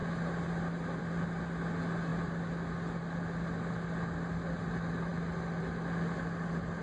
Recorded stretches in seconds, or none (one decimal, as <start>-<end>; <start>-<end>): 0.0-6.8